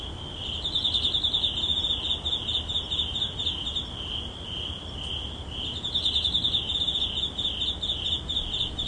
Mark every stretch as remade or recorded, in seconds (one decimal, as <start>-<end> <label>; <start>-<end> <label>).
0.0-8.9 recorded